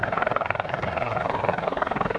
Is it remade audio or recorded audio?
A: remade